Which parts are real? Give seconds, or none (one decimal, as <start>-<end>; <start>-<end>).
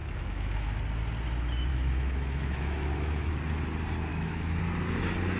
0.7-1.7; 3.3-4.1; 4.6-5.4